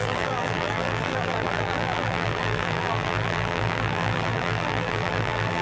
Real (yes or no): no